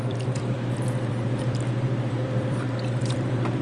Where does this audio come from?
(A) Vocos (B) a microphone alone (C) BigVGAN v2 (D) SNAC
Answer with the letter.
C